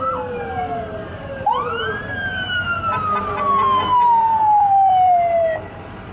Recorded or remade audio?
remade